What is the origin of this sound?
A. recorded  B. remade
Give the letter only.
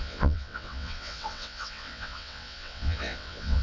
B